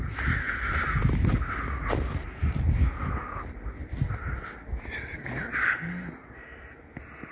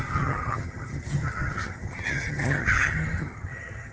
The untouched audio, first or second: first